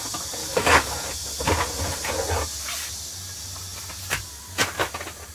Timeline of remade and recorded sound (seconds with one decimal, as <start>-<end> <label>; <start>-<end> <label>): 0.0-0.4 recorded; 0.4-1.1 remade; 1.1-5.3 recorded